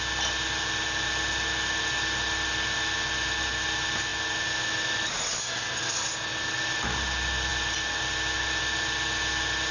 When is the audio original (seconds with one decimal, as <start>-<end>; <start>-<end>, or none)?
0.0-9.7